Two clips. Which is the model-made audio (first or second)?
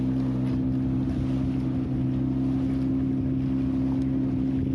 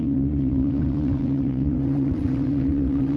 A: second